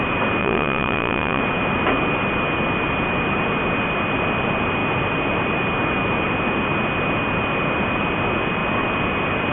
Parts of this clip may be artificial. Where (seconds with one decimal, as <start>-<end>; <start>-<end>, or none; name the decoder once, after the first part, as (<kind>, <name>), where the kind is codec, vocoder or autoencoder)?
0.4-1.4 (vocoder, Vocos)